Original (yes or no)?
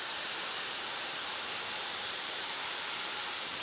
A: no